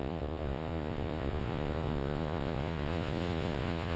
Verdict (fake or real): fake